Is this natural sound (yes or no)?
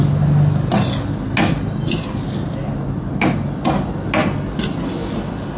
yes